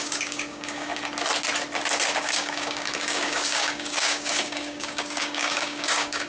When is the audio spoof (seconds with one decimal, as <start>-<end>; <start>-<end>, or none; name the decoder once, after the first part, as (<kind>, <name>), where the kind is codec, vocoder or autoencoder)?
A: 0.0-0.9 (codec, DAC); 2.2-6.3